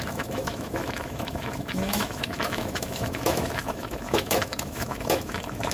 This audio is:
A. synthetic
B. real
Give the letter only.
A